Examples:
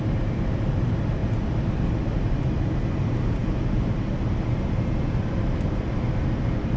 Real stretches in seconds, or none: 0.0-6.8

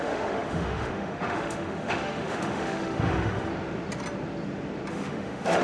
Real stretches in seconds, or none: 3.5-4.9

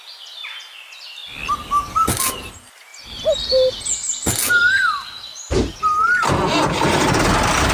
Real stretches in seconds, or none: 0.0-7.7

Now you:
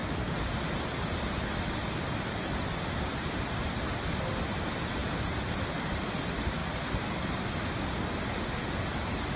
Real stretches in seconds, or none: 0.0-9.4